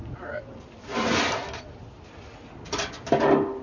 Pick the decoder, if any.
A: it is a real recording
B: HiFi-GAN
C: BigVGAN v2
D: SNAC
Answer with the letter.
A